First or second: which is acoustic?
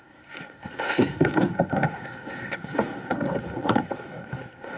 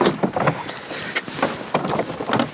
second